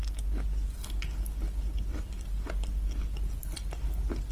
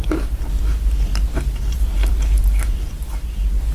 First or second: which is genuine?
first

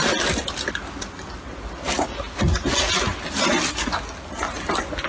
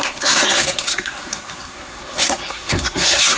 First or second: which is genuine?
first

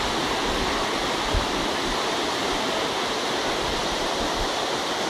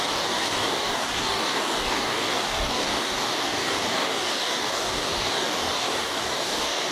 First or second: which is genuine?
first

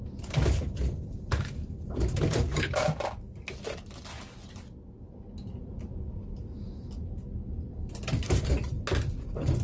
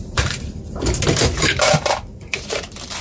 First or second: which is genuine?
first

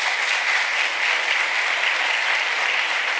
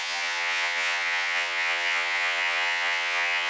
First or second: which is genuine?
first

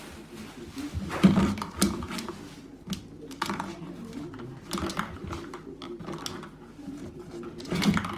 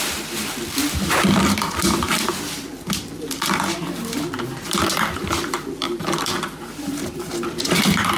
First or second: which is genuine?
first